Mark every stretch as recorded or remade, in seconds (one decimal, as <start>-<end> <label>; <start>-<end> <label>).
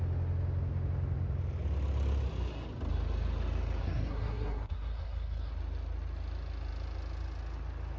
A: 0.0-3.8 recorded; 3.8-5.5 remade; 5.5-8.0 recorded